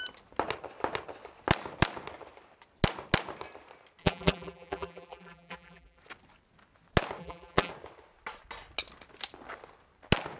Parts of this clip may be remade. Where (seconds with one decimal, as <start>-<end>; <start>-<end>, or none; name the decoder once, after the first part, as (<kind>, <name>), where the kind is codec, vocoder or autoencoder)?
4.0-6.0 (vocoder, BigVGAN v2); 7.2-7.7